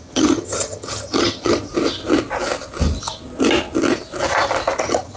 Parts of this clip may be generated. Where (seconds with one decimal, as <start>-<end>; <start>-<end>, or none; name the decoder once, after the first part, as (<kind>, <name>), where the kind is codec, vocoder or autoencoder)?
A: 0.0-1.7 (vocoder, HiFi-GAN); 4.8-5.2